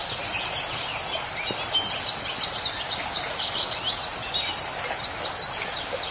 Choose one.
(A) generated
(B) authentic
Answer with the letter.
B